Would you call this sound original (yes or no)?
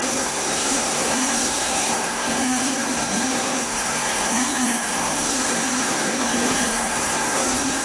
no